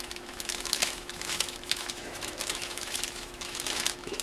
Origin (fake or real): fake